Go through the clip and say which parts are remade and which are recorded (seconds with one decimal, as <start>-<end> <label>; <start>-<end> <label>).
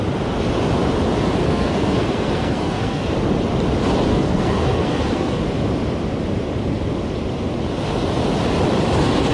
0.0-1.4 recorded; 1.4-3.0 remade; 3.0-4.1 recorded; 4.1-5.4 remade; 5.4-9.3 recorded